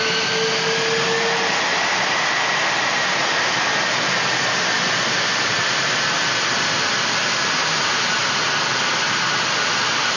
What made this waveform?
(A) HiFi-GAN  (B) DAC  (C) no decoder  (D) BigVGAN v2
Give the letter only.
C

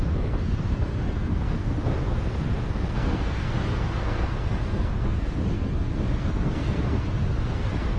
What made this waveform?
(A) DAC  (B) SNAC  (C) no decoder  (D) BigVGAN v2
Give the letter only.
B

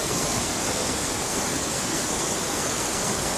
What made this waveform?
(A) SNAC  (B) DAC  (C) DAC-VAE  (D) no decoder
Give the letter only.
A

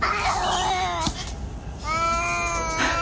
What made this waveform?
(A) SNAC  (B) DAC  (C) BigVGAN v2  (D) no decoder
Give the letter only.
D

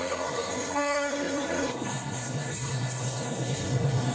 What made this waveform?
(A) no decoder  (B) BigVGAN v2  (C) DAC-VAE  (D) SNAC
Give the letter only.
D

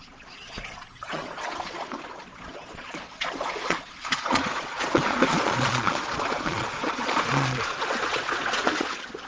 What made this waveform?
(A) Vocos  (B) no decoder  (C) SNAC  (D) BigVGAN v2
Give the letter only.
A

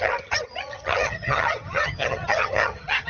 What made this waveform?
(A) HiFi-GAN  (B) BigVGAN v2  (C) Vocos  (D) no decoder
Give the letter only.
A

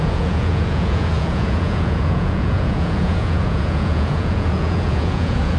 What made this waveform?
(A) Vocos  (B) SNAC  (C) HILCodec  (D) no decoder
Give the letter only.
A